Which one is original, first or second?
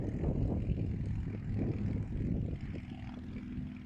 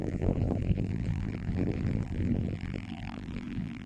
first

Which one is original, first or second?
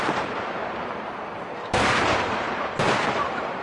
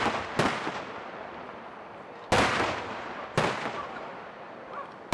second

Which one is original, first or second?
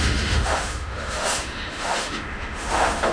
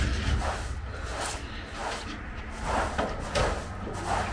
second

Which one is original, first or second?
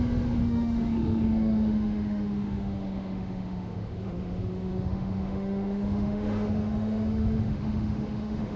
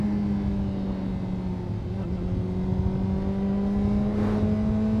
second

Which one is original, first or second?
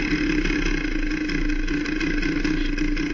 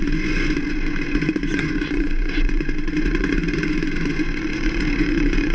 first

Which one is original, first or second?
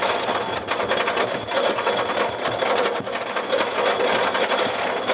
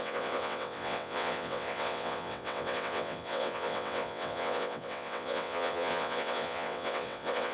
first